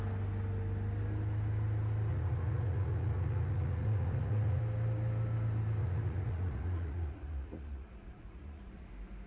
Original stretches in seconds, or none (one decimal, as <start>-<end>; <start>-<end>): 0.0-2.1; 4.6-5.8; 8.9-9.3